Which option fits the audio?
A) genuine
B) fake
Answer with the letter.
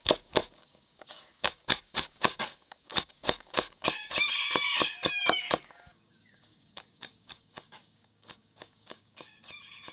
B